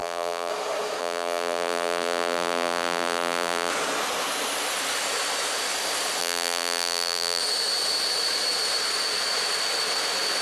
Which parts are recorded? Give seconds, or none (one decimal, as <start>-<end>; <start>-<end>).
0.5-1.0; 3.7-6.2; 7.4-10.4